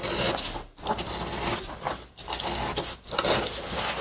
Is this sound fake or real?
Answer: real